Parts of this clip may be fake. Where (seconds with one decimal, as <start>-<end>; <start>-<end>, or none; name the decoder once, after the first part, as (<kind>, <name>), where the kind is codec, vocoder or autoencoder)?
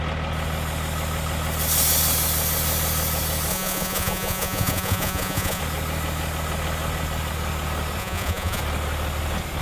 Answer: 3.5-5.6 (vocoder, Vocos); 8.0-8.6